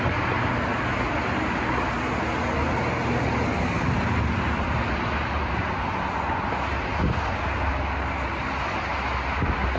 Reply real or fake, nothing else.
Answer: real